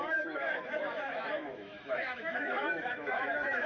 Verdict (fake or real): fake